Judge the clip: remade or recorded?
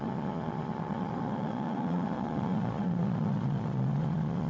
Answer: remade